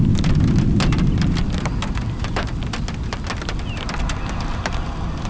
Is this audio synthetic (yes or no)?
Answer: no